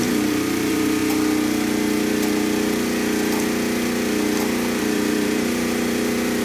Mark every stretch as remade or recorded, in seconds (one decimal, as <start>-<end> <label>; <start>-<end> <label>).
0.0-1.0 remade; 1.0-4.8 recorded; 4.8-6.4 remade